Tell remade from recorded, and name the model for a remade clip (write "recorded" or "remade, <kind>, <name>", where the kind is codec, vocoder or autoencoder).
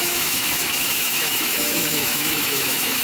remade, autoencoder, DAC-VAE